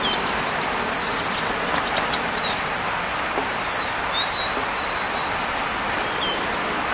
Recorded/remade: recorded